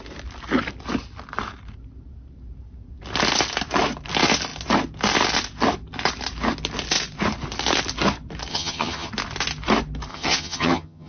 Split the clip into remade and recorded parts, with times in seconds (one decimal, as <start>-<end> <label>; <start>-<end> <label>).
0.0-8.5 recorded; 8.5-9.1 remade; 9.1-10.1 recorded; 10.1-11.1 remade